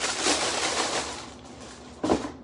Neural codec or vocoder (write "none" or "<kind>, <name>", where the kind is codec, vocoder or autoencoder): vocoder, BigVGAN v2